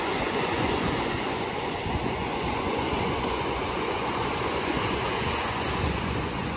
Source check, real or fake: fake